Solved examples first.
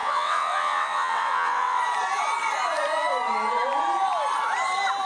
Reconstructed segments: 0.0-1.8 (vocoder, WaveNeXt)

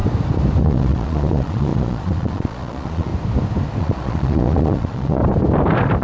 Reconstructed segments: 0.6-3.1 (vocoder, Vocos); 3.8-5.2

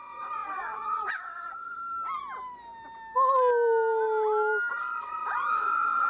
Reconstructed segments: 0.0-1.8 (vocoder, WaveNeXt); 4.7-6.1

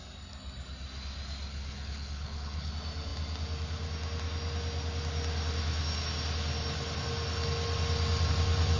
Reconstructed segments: 1.5-2.7 (codec, HILCodec)

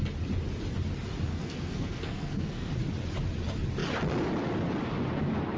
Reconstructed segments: 1.3-2.7 (codec, SNAC)

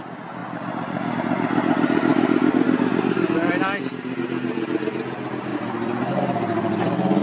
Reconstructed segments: none